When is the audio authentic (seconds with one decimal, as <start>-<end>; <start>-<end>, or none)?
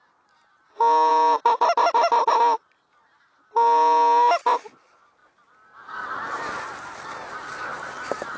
0.0-8.4